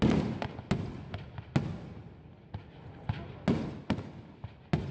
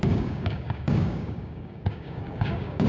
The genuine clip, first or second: first